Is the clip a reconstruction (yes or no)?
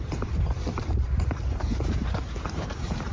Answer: yes